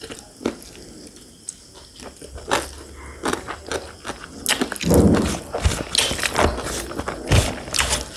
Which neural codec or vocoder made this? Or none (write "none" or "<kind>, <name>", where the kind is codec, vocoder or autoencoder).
none